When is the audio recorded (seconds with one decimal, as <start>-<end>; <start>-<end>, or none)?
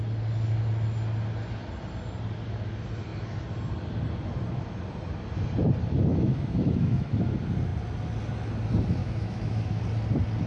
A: 0.0-6.1; 7.3-9.0; 9.8-10.5